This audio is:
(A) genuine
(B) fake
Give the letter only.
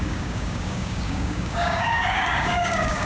B